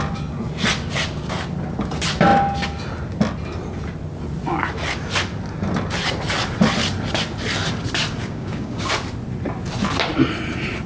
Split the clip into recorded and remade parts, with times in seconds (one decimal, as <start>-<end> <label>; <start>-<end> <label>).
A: 0.0-8.2 recorded; 8.2-8.9 remade; 8.9-10.9 recorded